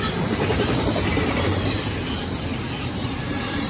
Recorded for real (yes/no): no